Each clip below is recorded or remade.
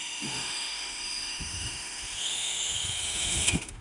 remade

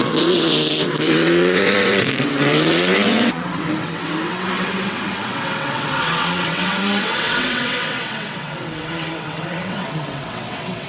remade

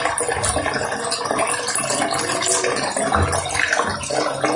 recorded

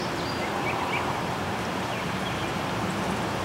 recorded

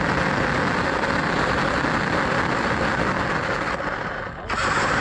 recorded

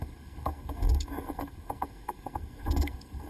remade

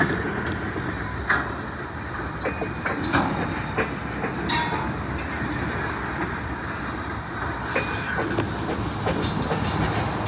recorded